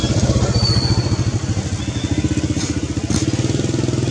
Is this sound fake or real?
real